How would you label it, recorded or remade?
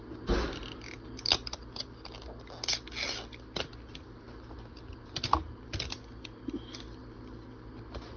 recorded